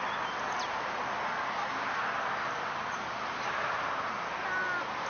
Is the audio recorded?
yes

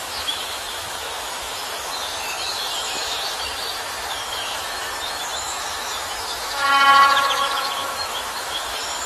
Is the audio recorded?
no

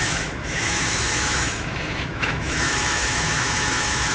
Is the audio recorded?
no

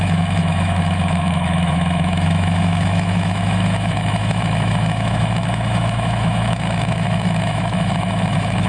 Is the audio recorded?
no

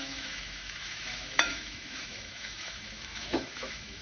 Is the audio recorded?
no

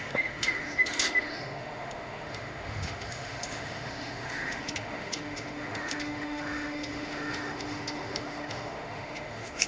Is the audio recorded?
no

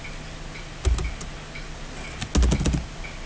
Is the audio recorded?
yes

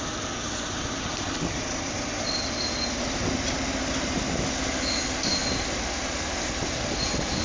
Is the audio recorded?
yes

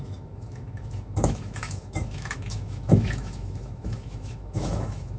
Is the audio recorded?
no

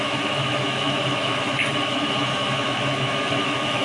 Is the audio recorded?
no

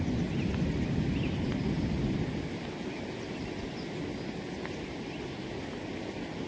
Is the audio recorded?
yes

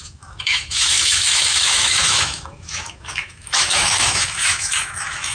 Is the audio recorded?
no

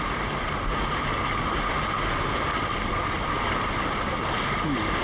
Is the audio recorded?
yes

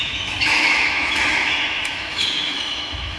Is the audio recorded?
no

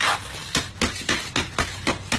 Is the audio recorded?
yes